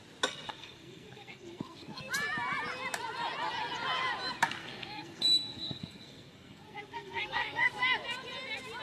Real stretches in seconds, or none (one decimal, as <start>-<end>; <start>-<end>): 0.0-0.5; 2.1-4.6; 7.7-8.8